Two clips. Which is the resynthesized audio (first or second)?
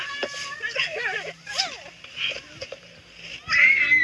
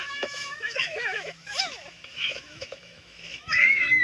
second